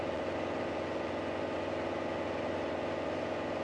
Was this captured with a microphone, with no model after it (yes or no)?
no